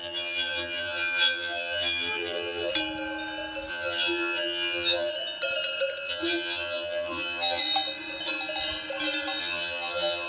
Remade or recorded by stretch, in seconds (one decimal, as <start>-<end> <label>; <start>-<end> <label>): 0.0-2.7 remade; 2.7-3.7 recorded; 3.7-5.1 remade; 5.1-6.1 recorded; 6.1-7.6 remade; 7.6-9.4 recorded; 9.4-10.3 remade